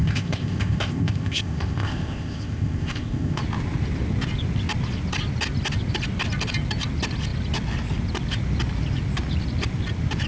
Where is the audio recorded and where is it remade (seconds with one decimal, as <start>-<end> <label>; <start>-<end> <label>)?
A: 0.0-3.4 remade; 3.4-10.3 recorded